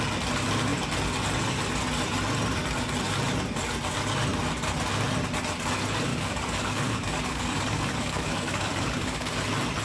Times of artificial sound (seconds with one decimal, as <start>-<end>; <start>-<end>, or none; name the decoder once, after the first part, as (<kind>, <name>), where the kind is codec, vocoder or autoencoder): 6.1-9.4 (codec, DAC)